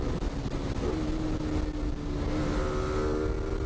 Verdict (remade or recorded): recorded